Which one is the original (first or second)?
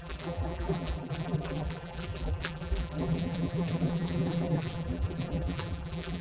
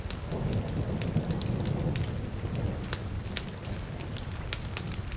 second